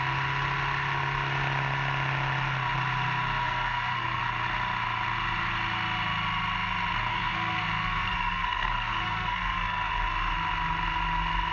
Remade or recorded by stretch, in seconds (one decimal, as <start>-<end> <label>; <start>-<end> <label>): 0.0-3.4 recorded; 3.4-4.2 remade; 4.2-7.1 recorded; 7.1-9.9 remade; 9.9-11.5 recorded